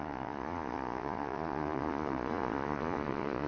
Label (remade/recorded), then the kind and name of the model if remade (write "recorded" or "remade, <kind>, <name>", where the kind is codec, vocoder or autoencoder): remade, vocoder, Vocos